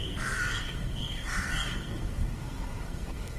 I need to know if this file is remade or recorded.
remade